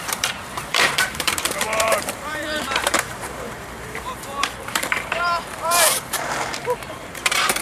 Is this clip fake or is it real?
fake